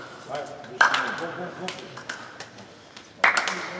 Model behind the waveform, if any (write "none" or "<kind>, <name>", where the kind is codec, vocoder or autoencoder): none